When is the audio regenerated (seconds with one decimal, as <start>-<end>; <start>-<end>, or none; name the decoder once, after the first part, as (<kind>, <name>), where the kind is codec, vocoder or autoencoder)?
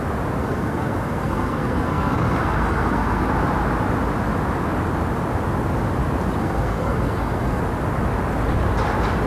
0.4-3.3 (codec, SNAC); 6.4-7.6